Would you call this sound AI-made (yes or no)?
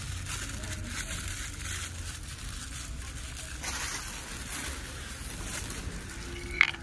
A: no